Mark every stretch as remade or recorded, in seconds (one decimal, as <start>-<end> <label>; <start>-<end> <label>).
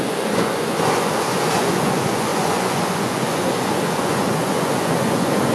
0.0-5.5 remade